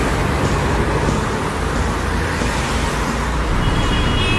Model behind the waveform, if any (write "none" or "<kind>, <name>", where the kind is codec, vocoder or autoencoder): none